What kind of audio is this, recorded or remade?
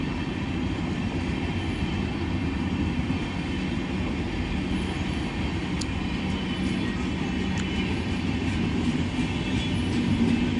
recorded